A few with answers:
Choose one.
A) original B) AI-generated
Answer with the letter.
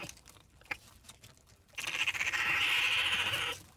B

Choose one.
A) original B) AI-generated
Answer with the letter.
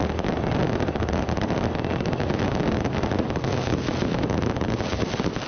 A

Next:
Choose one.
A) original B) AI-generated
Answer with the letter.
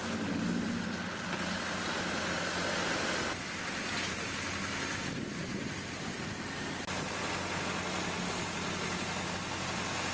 A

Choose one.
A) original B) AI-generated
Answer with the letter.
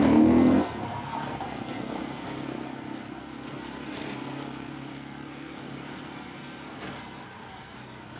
B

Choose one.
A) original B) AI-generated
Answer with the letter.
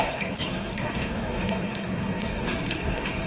B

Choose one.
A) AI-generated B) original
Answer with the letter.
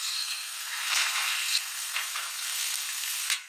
A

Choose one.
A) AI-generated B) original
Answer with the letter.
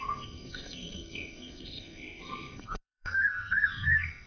A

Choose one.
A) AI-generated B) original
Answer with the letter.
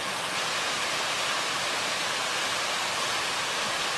B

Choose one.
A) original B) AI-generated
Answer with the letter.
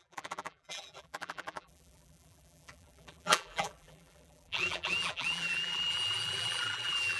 B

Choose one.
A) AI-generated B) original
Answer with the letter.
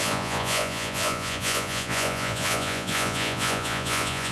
A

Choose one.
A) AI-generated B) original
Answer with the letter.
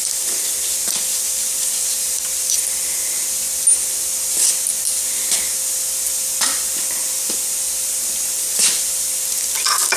B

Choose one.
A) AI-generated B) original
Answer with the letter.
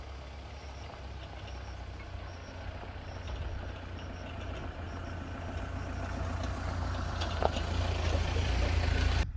B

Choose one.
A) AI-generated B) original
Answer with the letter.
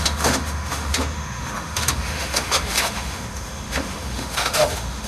A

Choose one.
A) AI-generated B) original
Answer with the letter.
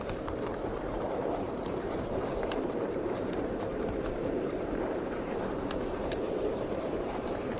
A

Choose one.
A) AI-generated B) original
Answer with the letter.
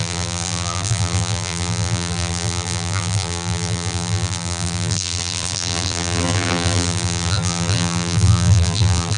A